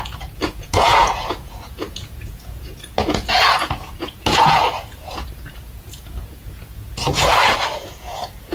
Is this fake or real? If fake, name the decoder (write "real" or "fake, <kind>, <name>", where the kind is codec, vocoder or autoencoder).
fake, vocoder, Vocos